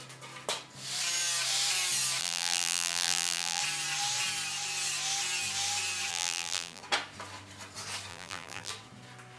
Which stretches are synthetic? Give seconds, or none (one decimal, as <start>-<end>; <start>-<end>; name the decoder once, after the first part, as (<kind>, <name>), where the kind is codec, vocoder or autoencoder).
2.2-3.6 (vocoder, BigVGAN v2); 6.1-6.8; 8.1-8.7